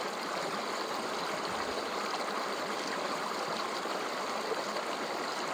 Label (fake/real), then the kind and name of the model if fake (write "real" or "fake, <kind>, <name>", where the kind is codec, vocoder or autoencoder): fake, vocoder, BigVGAN v2